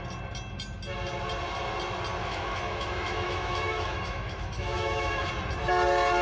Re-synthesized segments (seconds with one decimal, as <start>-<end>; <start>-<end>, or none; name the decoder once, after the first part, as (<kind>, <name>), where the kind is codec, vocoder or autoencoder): 2.2-5.3 (autoencoder, DAC-VAE)